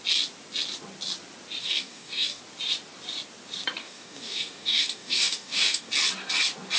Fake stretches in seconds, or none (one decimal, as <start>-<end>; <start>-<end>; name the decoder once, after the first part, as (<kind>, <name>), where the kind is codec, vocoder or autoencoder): 1.6-2.4 (codec, DAC); 3.8-5.9